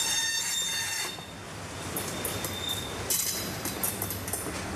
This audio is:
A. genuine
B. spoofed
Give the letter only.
A